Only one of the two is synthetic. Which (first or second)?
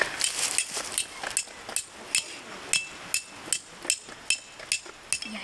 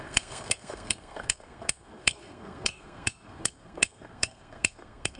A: second